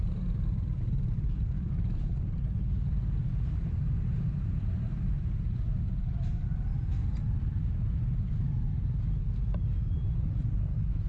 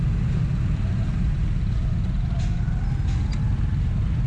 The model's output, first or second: first